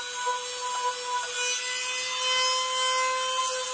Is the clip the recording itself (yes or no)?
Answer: yes